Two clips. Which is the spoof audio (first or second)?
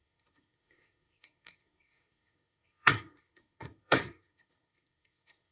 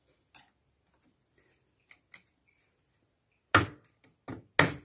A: first